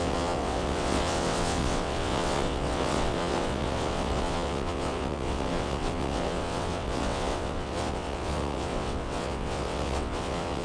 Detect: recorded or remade remade